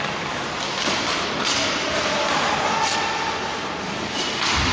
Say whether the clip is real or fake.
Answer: real